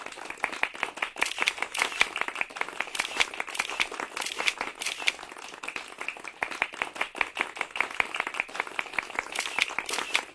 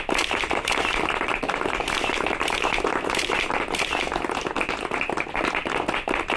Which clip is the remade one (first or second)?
second